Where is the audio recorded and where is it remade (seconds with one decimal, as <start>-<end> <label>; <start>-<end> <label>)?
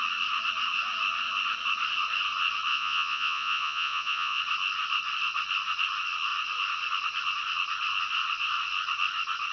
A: 0.0-2.7 recorded; 2.7-4.4 remade; 4.4-9.5 recorded